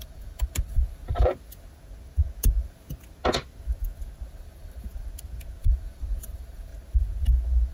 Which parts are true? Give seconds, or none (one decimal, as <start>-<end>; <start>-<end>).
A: 1.3-4.3; 4.9-5.6; 6.7-7.7

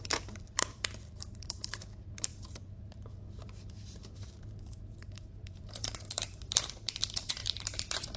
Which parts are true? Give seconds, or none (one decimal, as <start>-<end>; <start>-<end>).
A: none

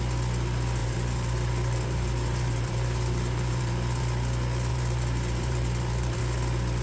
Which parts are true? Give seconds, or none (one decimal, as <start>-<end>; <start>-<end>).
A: 0.0-0.8; 4.0-4.7; 6.2-6.8

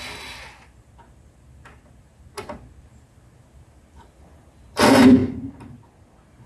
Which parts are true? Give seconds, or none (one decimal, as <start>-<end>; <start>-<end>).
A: 0.0-5.2; 5.7-6.5

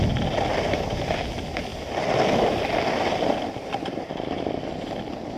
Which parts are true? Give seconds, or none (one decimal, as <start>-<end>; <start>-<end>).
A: 0.0-5.4